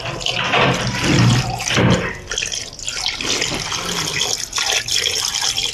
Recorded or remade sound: recorded